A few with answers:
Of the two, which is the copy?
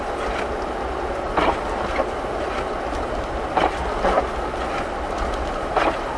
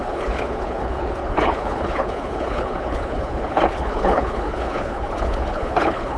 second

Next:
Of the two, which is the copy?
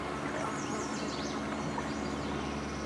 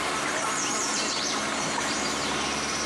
second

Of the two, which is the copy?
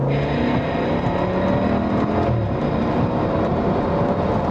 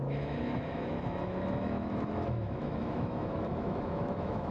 second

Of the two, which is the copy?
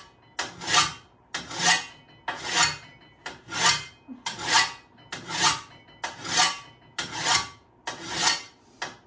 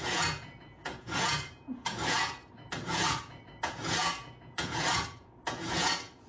second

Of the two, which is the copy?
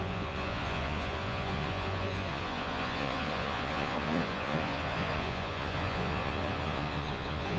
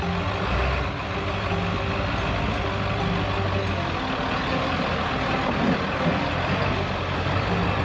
first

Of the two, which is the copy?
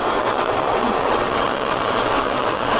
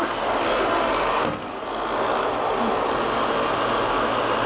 first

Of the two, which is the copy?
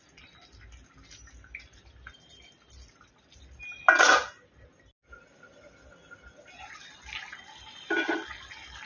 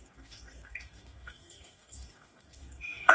second